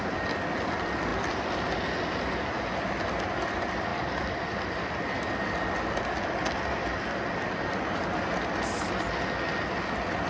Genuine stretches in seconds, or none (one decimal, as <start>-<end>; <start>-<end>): 0.0-10.3